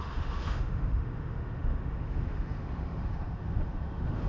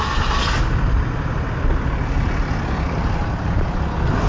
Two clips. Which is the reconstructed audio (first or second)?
first